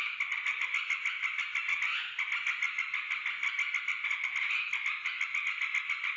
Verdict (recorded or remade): recorded